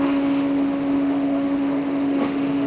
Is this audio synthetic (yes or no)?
yes